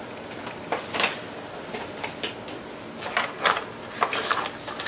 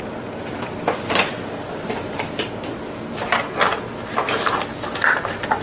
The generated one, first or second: first